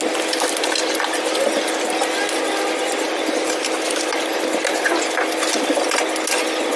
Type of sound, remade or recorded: recorded